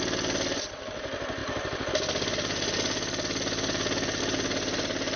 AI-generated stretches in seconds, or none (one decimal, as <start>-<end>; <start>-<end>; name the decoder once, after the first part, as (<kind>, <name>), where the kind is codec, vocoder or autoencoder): none